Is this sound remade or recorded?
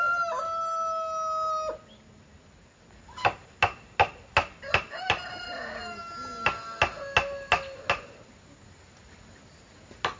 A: recorded